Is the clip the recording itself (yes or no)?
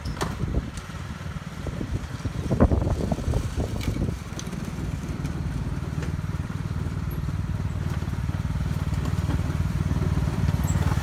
no